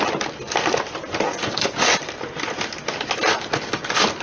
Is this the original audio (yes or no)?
yes